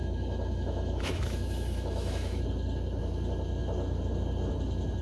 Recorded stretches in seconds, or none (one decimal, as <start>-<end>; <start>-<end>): 2.4-5.0